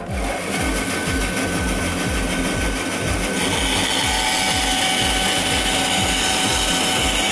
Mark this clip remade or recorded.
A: recorded